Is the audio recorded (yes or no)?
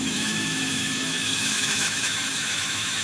no